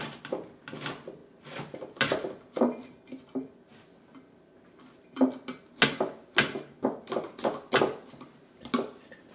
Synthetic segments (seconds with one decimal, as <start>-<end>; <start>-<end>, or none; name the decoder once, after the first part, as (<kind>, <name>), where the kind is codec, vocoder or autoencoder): none